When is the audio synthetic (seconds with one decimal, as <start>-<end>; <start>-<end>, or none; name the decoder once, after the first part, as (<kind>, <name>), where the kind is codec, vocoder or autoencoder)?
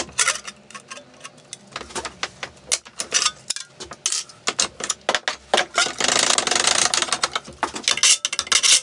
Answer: none